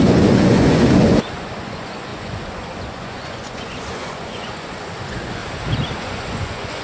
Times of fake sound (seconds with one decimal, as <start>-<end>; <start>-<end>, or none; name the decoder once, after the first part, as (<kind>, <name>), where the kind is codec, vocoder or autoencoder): 0.0-5.4 (vocoder, Vocos); 6.0-6.8

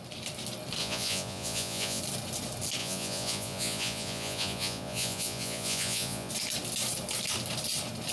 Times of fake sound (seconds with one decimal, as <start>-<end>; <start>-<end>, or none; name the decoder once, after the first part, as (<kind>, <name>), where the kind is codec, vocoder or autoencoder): 0.8-2.0 (vocoder, Vocos); 2.8-6.3

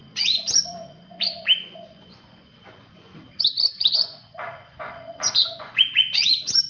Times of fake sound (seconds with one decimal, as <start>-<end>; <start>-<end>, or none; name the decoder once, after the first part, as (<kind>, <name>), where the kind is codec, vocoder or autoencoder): 0.0-3.1 (vocoder, Vocos); 3.9-6.7

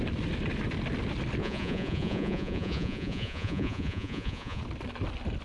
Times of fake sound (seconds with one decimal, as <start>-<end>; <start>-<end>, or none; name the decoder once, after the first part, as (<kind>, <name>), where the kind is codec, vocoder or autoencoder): 1.4-4.6 (vocoder, Vocos)

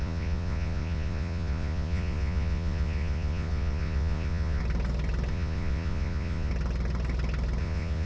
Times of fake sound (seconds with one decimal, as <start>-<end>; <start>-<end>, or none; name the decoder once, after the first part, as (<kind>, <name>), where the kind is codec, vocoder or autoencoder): 0.0-4.6 (vocoder, Vocos); 5.3-6.5; 7.6-8.1

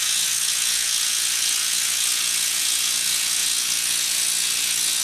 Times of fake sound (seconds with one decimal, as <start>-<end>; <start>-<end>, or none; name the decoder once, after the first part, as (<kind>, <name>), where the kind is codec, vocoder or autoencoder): 0.0-5.0 (vocoder, Vocos)